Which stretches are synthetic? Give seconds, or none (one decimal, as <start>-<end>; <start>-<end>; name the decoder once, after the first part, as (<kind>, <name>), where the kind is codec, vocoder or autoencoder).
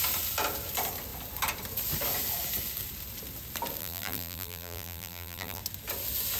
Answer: 3.8-5.6 (vocoder, BigVGAN v2)